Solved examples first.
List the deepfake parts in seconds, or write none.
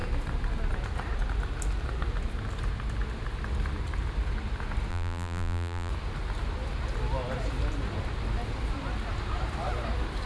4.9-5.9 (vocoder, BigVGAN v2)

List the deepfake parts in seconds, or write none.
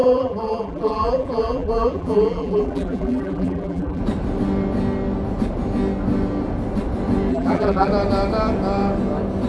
0.0-4.0 (vocoder, BigVGAN v2); 7.3-7.9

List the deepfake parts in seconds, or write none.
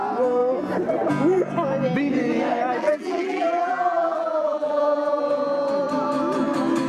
2.8-5.2 (vocoder, BigVGAN v2)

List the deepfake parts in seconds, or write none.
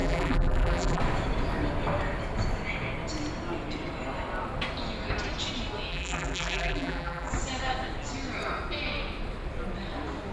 0.0-1.0 (vocoder, BigVGAN v2); 5.9-7.3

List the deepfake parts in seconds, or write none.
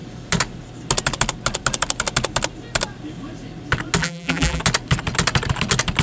4.0-4.6 (vocoder, BigVGAN v2)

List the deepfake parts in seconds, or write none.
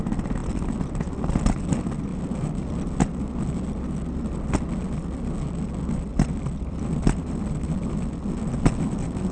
6.1-8.1 (vocoder, BigVGAN v2)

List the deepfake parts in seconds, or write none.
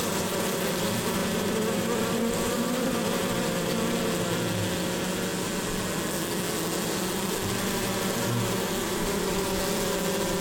1.2-3.7 (vocoder, BigVGAN v2)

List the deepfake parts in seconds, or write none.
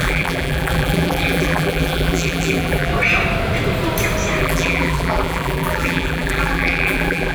0.0-2.9 (vocoder, BigVGAN v2); 4.4-7.3